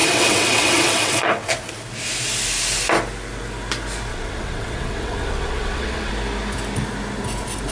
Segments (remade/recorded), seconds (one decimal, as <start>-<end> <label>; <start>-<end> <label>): 0.0-1.5 remade; 1.5-4.1 recorded; 4.1-6.1 remade; 6.1-7.7 recorded